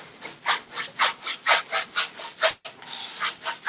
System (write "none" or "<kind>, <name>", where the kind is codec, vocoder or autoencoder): none